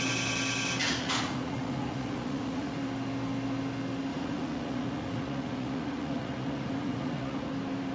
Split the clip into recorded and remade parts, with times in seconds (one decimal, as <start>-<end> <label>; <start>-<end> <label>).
0.0-0.8 recorded; 0.8-2.8 remade; 2.8-4.1 recorded; 4.1-7.5 remade; 7.5-7.9 recorded